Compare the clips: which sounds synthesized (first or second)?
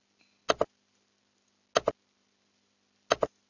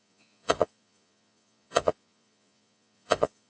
second